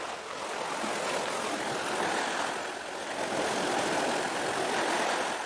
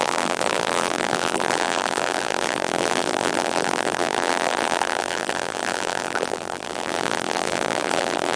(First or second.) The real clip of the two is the first